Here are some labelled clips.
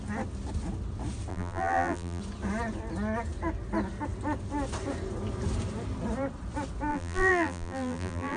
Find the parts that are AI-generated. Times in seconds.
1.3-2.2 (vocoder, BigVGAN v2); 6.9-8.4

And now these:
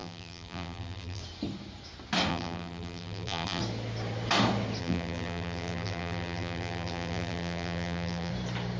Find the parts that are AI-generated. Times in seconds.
0.0-1.2 (vocoder, BigVGAN v2); 2.3-3.6; 4.8-8.3

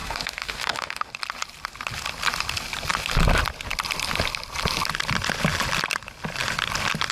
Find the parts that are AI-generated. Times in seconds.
0.0-1.1 (autoencoder, DAC-VAE)

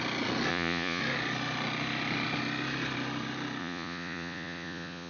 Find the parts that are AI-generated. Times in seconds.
0.5-1.0 (vocoder, Vocos); 3.6-5.1

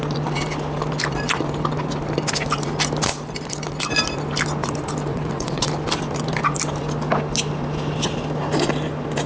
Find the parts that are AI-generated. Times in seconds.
5.1-5.7 (vocoder, WaveNeXt)

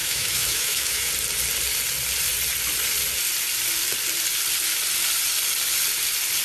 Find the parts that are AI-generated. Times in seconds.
0.0-1.1 (autoencoder, DAC-VAE)

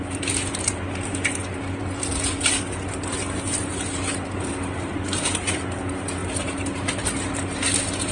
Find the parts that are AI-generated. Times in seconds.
none

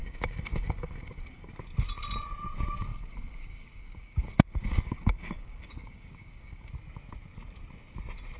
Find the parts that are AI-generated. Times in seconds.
0.0-1.5 (codec, DAC); 2.9-6.7